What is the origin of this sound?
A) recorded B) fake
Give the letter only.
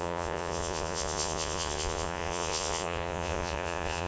B